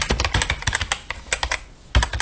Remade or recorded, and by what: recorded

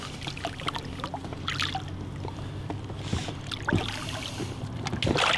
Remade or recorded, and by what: recorded